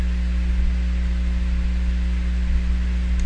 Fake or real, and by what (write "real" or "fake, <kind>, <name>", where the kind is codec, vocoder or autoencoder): real